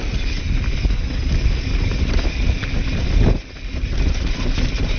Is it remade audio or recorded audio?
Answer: recorded